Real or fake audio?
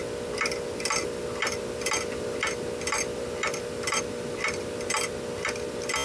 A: real